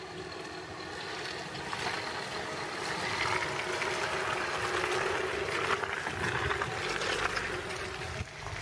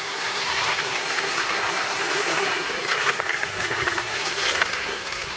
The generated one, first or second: second